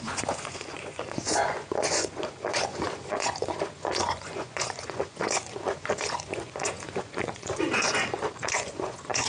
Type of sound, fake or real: fake